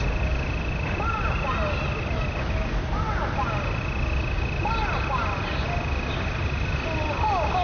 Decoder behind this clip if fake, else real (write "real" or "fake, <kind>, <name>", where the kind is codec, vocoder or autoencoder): real